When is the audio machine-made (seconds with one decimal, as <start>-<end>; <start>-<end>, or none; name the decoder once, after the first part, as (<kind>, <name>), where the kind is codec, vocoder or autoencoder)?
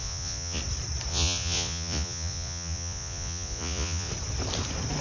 0.0-0.6 (vocoder, Vocos); 1.1-4.1